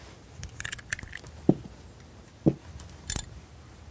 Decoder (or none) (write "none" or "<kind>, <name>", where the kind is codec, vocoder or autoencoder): none